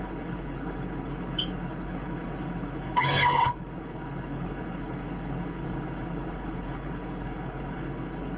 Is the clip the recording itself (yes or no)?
no